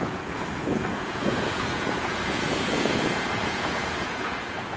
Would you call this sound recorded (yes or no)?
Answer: no